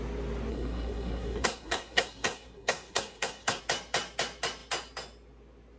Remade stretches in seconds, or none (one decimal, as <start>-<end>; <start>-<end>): 0.5-3.6